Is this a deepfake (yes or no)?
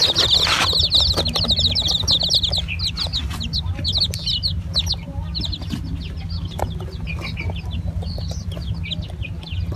no